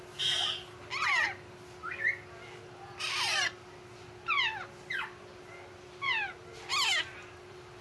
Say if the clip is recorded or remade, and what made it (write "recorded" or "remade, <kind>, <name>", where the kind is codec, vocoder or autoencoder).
recorded